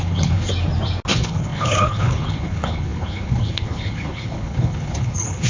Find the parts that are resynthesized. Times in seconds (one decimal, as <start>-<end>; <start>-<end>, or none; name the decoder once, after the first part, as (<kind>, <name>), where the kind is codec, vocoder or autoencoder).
0.0-0.5 (codec, HILCodec); 1.1-5.5